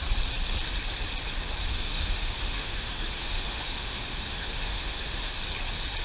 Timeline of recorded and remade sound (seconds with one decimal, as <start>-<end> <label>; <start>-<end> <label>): 0.0-1.7 recorded; 1.7-5.3 remade; 5.3-6.0 recorded